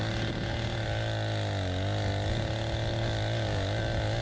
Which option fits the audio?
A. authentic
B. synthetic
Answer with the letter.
A